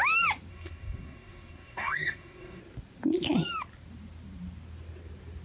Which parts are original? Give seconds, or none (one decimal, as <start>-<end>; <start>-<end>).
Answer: 0.0-0.5; 2.6-5.4